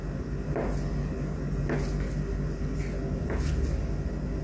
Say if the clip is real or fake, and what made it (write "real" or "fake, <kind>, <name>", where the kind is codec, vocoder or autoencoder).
real